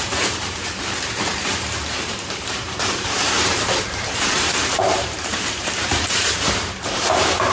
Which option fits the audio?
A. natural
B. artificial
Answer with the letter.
B